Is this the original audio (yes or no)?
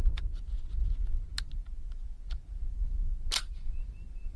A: yes